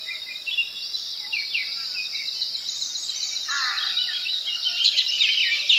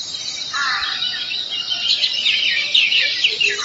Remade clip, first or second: second